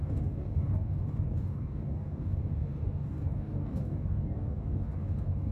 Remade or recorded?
remade